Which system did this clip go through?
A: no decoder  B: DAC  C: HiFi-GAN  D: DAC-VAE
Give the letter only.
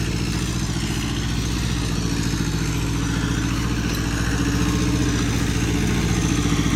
A